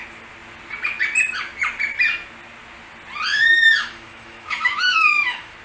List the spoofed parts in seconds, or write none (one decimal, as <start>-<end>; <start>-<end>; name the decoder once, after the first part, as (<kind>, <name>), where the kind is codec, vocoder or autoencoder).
3.3-5.6 (autoencoder, DAC-VAE)